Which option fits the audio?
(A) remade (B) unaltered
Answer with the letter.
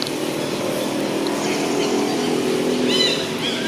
B